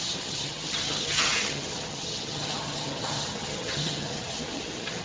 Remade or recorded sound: remade